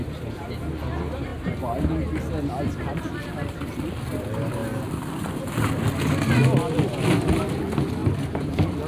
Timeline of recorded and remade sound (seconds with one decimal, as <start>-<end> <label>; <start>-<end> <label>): 0.0-8.9 recorded